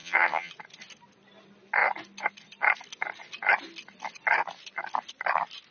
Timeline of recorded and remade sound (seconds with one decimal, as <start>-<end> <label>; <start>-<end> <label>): 0.0-0.5 remade; 0.5-5.7 recorded